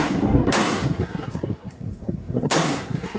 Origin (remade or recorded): remade